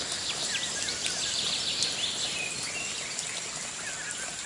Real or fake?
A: real